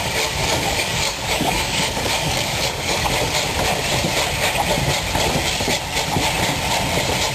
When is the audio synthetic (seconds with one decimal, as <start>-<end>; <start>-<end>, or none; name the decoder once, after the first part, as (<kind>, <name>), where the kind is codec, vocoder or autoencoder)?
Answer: 0.4-3.1 (codec, DAC)